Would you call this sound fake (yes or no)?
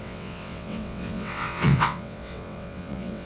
yes